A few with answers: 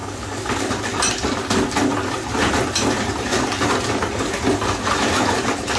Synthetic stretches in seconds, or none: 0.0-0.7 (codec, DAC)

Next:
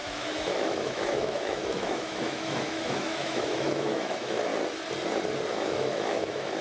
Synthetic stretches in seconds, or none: 0.0-4.5 (autoencoder, DAC-VAE); 5.5-6.6

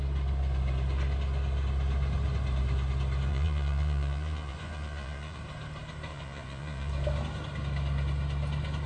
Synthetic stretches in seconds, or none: 3.3-5.4 (vocoder, Vocos); 6.1-6.9

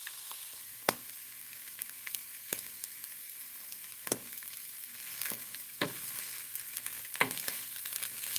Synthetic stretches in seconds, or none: 0.0-8.4 (codec, SNAC)

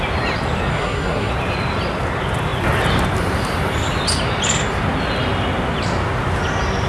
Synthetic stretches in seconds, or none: 0.7-1.3 (codec, SNAC)

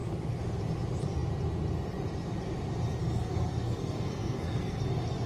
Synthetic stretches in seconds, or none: 3.0-4.8 (codec, SNAC)

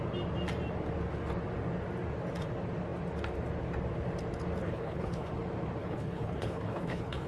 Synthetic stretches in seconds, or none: 4.6-5.3 (codec, HILCodec); 5.8-7.3

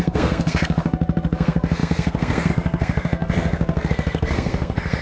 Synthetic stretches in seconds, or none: 0.0-5.0 (codec, SNAC)